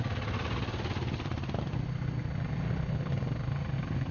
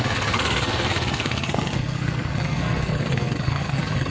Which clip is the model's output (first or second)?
second